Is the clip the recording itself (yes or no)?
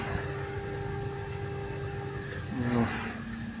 yes